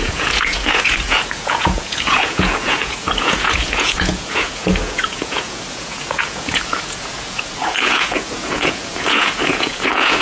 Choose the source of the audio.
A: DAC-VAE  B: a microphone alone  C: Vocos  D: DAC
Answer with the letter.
C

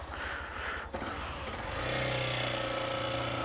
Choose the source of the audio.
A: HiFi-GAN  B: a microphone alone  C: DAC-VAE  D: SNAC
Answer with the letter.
B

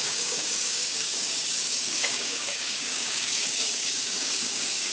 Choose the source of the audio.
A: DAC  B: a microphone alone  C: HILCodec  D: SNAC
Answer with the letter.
A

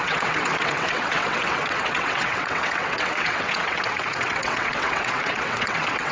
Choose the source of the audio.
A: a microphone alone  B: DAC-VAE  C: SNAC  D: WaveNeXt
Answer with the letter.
D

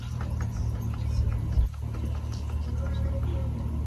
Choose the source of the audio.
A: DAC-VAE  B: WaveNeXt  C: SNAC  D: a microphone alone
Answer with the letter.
D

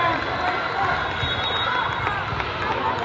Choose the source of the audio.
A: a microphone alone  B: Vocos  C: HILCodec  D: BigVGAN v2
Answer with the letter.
A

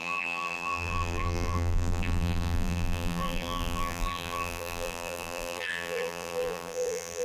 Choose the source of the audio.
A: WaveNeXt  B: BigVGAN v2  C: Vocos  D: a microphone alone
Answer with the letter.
B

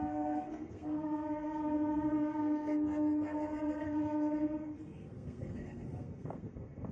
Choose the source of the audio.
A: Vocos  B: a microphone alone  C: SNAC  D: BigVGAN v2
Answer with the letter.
C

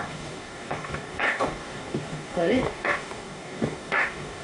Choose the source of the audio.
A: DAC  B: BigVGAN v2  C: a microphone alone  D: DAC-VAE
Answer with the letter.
A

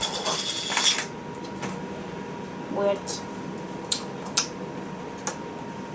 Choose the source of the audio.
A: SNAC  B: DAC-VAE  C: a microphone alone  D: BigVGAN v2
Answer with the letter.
C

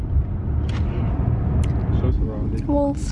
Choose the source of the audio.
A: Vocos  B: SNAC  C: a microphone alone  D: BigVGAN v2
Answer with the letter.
C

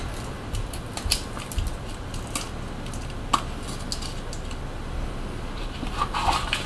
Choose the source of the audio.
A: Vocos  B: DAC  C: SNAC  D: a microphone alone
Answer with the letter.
D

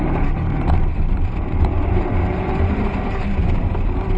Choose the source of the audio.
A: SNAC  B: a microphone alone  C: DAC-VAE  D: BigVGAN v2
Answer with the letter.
D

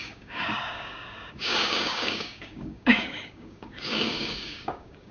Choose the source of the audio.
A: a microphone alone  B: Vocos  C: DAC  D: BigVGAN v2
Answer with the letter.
C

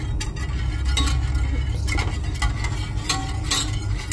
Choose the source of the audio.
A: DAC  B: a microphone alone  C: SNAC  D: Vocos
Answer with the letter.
B